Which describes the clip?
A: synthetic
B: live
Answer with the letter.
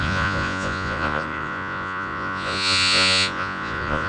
A